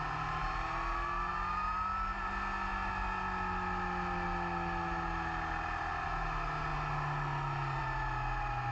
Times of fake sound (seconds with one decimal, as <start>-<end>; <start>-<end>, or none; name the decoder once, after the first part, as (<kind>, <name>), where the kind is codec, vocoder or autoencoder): none